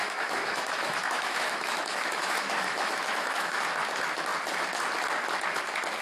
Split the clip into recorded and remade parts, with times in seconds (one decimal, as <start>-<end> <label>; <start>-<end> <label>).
0.0-3.6 remade; 3.6-6.0 recorded